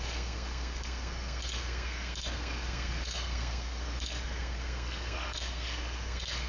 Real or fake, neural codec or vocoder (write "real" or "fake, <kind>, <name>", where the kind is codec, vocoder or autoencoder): fake, codec, SNAC